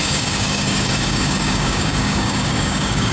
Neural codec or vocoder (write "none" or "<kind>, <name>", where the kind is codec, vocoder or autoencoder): codec, DAC